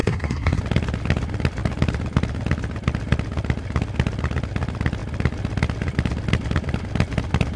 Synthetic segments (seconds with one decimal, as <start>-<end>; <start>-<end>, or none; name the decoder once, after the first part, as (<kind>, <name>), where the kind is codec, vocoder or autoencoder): 0.0-0.6 (codec, SNAC)